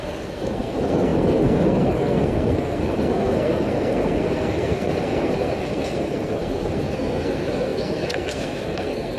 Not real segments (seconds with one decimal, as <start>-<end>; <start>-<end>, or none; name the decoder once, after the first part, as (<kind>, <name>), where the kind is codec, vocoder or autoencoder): 0.0-9.2 (codec, SNAC)